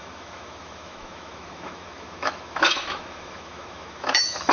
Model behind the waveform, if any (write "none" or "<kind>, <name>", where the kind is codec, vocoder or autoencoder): autoencoder, DAC-VAE